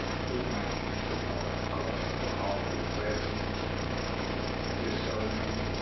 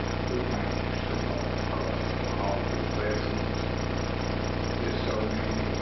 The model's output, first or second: first